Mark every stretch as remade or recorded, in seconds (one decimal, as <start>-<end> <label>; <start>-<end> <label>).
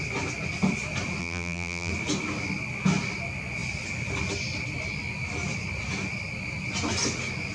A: 0.0-1.2 recorded; 1.2-1.9 remade; 1.9-7.5 recorded